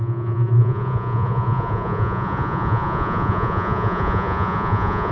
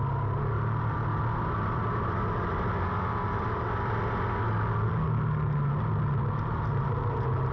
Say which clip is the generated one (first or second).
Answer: first